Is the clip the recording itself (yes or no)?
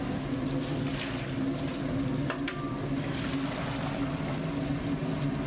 yes